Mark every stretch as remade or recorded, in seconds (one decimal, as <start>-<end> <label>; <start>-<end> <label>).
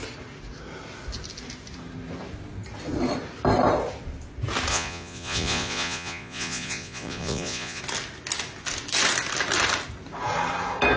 0.0-4.7 recorded; 4.7-7.8 remade; 7.8-11.0 recorded